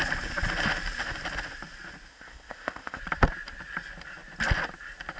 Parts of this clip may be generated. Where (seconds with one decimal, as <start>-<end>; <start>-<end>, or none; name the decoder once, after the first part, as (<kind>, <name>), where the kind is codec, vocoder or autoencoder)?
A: 2.1-3.0 (codec, ZipCodec)